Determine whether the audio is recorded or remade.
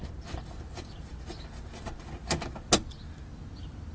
recorded